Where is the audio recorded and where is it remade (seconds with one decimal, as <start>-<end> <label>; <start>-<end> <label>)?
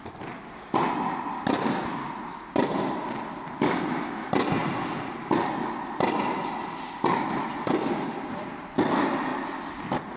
0.0-10.2 recorded